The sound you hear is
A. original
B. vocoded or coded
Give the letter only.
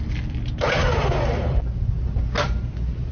A